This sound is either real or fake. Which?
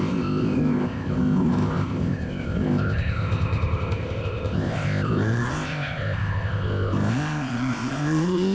fake